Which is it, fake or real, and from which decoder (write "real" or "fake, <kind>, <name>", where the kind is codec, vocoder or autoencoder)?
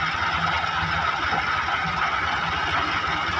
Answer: real